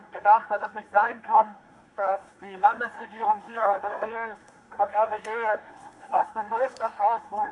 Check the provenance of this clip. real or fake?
fake